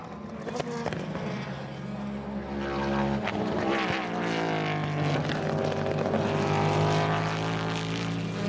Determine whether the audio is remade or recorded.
recorded